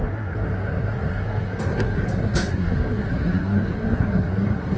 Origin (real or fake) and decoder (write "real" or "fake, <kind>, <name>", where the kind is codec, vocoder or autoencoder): fake, codec, SNAC